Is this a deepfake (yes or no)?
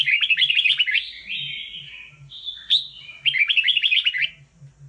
no